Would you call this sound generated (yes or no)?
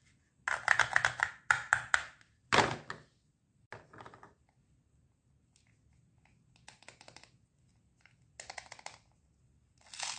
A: no